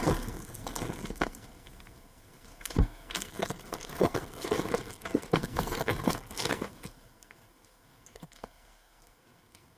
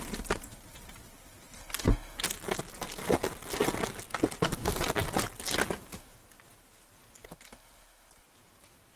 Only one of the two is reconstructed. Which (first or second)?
first